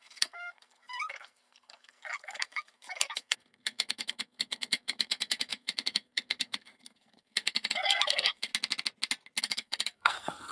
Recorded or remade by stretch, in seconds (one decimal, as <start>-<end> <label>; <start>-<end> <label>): 0.0-8.5 remade; 8.5-9.4 recorded; 9.4-10.5 remade